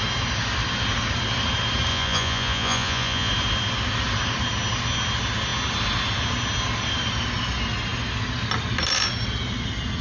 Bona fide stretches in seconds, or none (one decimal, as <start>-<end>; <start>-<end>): 0.0-1.9; 3.3-10.0